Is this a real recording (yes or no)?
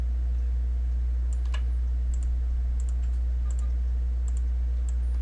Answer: yes